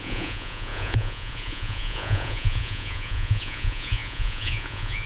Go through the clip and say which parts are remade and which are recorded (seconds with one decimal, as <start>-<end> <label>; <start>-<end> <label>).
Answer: 0.0-5.1 remade